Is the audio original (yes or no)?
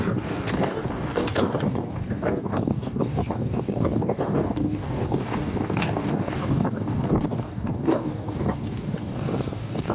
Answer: no